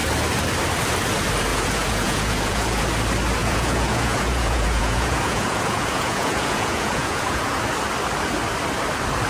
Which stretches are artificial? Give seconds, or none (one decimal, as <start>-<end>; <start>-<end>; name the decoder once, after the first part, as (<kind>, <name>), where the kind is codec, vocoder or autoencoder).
1.5-2.8 (vocoder, Vocos); 3.4-7.6